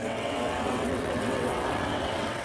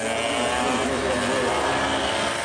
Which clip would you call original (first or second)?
second